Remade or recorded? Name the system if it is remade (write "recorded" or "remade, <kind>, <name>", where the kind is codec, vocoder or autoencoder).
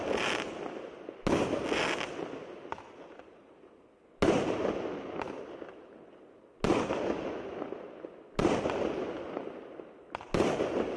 recorded